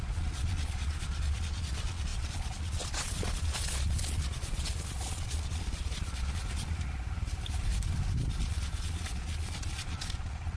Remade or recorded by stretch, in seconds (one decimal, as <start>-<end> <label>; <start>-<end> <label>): 0.0-6.4 remade; 6.4-8.4 recorded; 8.4-10.6 remade